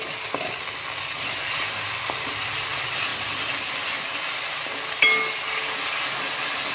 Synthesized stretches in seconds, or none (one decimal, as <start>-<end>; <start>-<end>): 3.1-3.7